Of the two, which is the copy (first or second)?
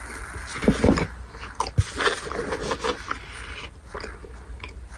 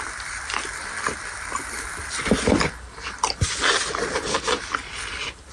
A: second